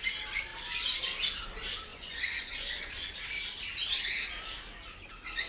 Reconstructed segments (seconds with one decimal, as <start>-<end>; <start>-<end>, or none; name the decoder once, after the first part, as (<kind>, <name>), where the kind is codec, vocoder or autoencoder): 1.9-3.1 (vocoder, Vocos)